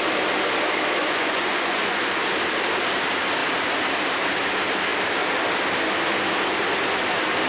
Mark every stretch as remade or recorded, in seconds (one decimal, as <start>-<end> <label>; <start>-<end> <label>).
0.0-1.0 recorded; 1.0-2.0 remade; 2.0-7.5 recorded